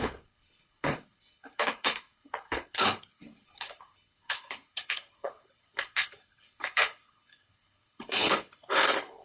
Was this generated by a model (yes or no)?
yes